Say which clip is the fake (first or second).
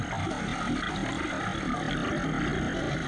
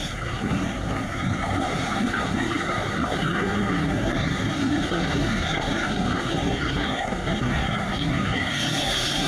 second